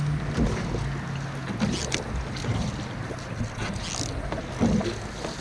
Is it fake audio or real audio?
real